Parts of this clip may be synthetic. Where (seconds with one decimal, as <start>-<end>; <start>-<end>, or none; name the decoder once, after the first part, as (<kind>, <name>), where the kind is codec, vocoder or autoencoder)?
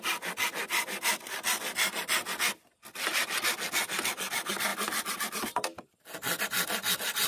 none